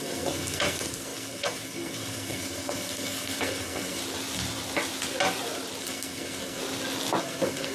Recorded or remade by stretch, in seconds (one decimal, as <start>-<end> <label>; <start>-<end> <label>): 0.0-4.0 remade; 4.0-5.8 recorded; 5.8-6.6 remade; 6.6-7.2 recorded; 7.2-7.7 remade

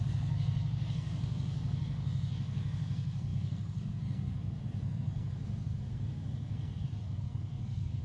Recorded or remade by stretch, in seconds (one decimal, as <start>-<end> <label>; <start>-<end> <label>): 0.0-8.0 remade

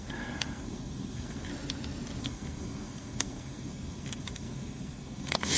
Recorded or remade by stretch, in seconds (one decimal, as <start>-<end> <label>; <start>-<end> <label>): 0.0-1.5 remade; 1.5-2.2 recorded; 2.2-5.6 remade

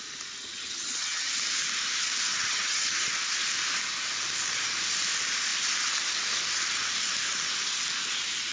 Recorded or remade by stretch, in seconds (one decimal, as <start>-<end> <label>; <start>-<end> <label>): 0.0-0.4 recorded; 0.4-1.3 remade; 1.3-2.3 recorded; 2.3-3.1 remade; 3.1-8.5 recorded

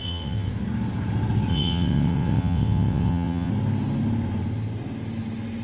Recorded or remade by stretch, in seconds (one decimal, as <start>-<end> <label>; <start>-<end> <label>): 0.0-0.5 remade; 0.5-1.5 recorded; 1.5-3.5 remade; 3.5-5.6 recorded

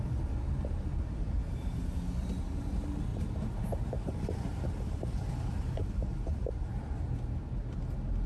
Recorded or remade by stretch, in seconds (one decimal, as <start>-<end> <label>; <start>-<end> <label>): 0.0-3.1 recorded; 3.1-7.1 remade; 7.1-8.3 recorded

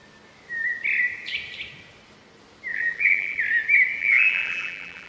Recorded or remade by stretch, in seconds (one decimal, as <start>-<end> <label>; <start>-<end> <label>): 0.0-2.7 recorded; 2.7-3.4 remade; 3.4-4.0 recorded; 4.0-5.1 remade

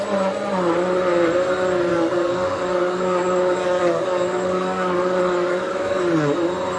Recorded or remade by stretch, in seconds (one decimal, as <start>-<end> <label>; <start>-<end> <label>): 0.0-1.9 recorded; 1.9-6.0 remade; 6.0-6.8 recorded